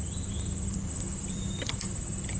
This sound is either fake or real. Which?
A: fake